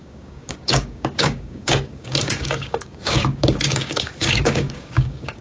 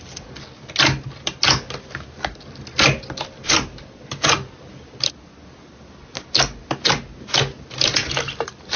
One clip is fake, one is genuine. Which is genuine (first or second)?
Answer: second